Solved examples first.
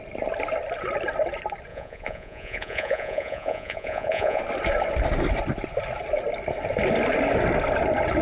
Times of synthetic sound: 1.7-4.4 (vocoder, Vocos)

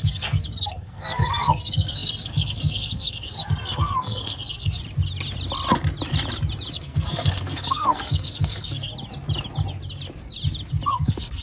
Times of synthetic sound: 0.0-4.8 (codec, SNAC); 6.7-8.9; 10.9-11.4

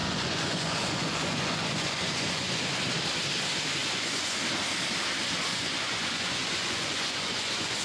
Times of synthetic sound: 0.0-2.8 (vocoder, Vocos); 3.8-4.4; 5.5-7.8